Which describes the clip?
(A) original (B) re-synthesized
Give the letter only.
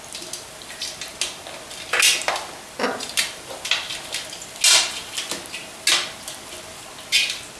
A